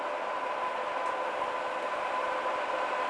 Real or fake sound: real